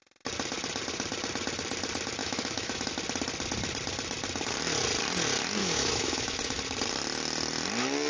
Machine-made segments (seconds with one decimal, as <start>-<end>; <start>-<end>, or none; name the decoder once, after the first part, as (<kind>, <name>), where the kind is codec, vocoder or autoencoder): 2.2-2.9 (autoencoder, DAC-VAE); 5.6-6.6